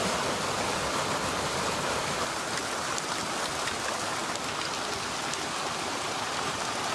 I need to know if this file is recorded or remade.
recorded